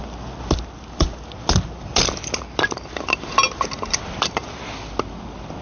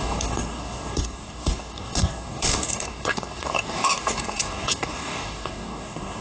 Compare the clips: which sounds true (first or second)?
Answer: first